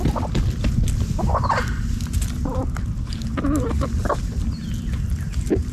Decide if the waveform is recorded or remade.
recorded